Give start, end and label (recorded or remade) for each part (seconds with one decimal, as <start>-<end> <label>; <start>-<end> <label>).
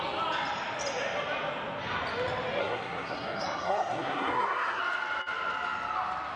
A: 0.0-2.6 recorded; 2.6-4.8 remade; 4.8-6.4 recorded